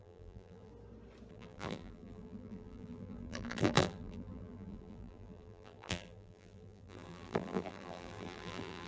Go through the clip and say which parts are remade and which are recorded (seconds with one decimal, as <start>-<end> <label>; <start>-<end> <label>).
0.0-0.7 remade; 0.7-1.3 recorded; 1.3-8.9 remade